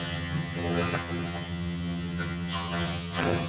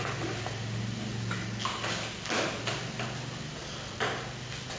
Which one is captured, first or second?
second